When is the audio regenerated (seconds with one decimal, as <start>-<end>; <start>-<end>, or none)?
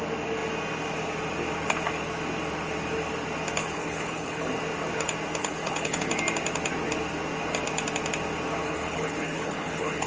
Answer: 3.6-4.5; 5.4-6.1; 8.6-10.1